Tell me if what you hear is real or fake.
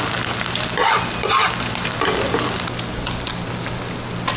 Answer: real